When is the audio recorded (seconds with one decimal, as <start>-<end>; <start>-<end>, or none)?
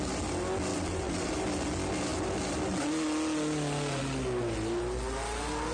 0.0-0.7; 1.3-5.7